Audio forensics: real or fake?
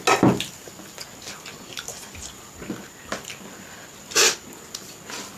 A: real